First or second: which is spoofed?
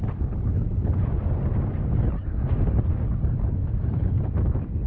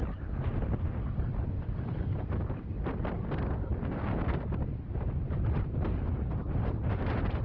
second